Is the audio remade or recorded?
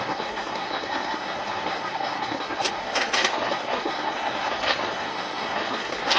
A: remade